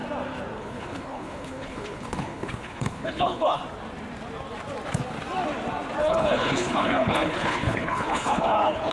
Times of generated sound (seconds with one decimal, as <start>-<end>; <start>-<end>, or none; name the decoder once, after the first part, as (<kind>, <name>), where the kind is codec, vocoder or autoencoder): 0.6-3.6 (codec, HILCodec); 6.0-8.9